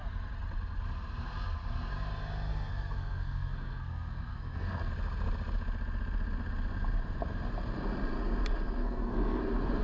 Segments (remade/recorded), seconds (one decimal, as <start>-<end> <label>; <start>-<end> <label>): 0.0-2.5 recorded; 2.5-4.9 remade; 4.9-8.8 recorded; 8.8-9.4 remade; 9.4-9.8 recorded